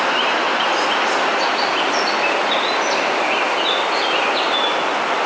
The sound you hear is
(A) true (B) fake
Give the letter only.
B